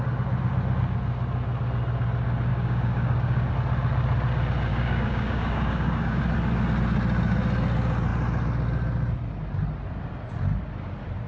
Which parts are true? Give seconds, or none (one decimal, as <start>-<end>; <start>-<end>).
0.0-2.5; 3.5-4.7; 6.2-11.3